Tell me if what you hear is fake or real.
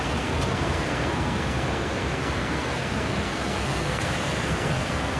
fake